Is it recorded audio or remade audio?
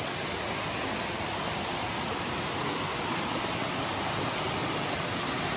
recorded